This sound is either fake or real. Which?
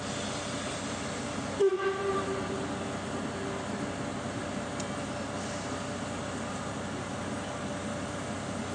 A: real